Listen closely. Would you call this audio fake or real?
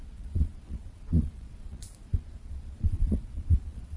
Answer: fake